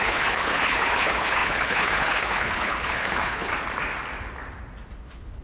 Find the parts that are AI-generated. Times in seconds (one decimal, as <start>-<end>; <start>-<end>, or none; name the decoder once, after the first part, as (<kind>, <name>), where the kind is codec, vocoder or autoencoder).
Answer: 0.0-3.5 (codec, HILCodec); 5.0-5.4